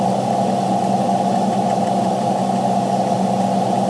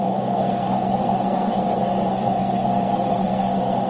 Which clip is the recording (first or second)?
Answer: first